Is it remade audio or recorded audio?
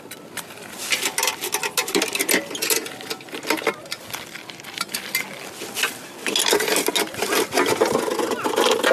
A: recorded